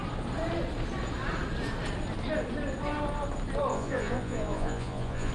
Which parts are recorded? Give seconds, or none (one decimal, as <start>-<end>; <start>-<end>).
0.0-3.7